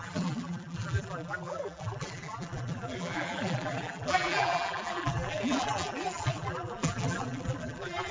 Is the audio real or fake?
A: fake